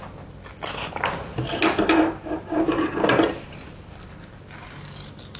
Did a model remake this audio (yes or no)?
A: no